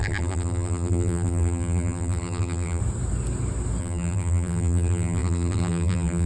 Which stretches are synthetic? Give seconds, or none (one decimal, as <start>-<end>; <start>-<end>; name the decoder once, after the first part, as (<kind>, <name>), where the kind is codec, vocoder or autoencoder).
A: 0.0-2.8 (vocoder, BigVGAN v2); 3.8-6.3